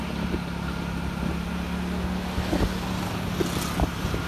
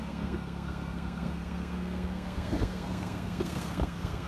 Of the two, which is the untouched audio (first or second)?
first